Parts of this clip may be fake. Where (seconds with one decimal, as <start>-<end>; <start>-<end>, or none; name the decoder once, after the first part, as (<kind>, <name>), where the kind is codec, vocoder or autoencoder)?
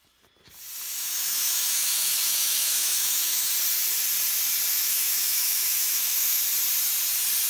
0.9-3.5 (autoencoder, DAC-VAE); 4.7-6.4